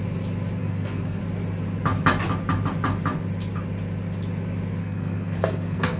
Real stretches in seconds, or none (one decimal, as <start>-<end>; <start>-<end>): 0.0-0.6; 1.2-4.8